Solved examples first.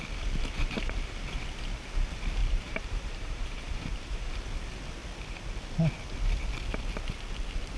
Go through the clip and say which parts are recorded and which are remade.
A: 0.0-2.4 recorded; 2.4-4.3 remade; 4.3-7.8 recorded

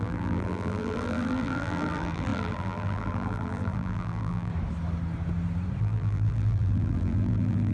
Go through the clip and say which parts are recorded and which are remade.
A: 0.0-4.5 remade; 4.5-5.8 recorded; 5.8-7.7 remade